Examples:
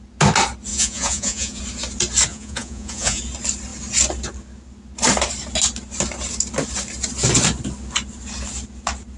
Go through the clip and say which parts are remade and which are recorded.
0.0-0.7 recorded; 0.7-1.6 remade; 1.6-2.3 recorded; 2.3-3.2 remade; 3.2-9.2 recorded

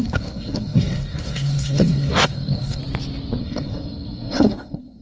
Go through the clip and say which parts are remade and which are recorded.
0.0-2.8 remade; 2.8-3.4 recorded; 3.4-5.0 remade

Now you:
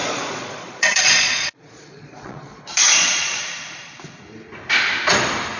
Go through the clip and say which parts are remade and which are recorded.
0.0-3.4 remade; 3.4-5.6 recorded